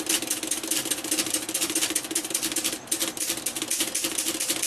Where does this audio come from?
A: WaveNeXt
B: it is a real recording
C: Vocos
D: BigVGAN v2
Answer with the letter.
D